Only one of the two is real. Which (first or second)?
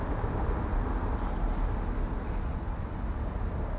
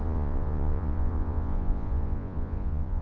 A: first